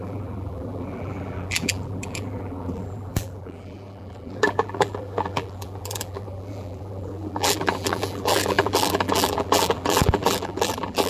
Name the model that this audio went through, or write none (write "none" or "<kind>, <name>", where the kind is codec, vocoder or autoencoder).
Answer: vocoder, BigVGAN v2